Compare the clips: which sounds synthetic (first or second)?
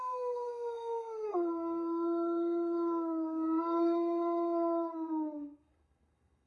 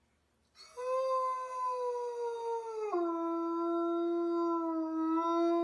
first